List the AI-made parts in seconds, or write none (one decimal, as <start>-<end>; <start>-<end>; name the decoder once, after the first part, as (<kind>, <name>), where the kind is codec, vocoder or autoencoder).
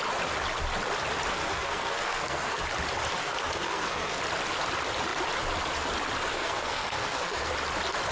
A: 1.3-2.6 (codec, SNAC); 3.2-4.2; 6.3-7.5